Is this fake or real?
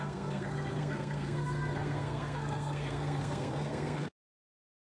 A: fake